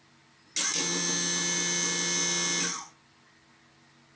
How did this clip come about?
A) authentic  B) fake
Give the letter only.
A